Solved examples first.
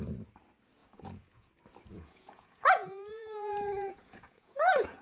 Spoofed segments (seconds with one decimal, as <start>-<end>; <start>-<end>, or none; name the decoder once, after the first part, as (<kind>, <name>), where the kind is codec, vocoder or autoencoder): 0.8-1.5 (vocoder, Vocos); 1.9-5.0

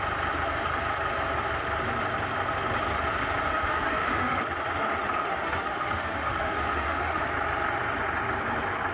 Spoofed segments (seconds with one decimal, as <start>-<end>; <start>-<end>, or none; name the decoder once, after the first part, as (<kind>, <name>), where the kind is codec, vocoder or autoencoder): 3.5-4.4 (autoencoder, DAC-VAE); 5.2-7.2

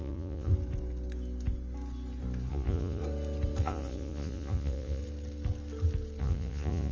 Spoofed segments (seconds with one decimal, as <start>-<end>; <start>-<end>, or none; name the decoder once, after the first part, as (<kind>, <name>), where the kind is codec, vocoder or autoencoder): 0.0-0.5 (vocoder, Vocos); 2.5-3.0; 3.6-5.0; 6.2-6.9

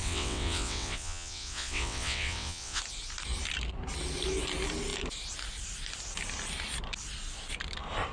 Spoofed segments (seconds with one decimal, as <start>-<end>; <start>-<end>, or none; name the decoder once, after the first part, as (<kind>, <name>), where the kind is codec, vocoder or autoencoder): 0.0-2.8 (vocoder, WaveNeXt)

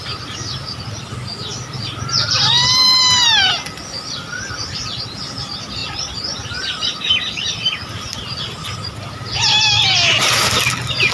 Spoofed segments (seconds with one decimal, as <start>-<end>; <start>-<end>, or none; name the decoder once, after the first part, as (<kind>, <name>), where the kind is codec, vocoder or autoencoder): 1.5-4.3 (vocoder, BigVGAN v2); 5.8-8.4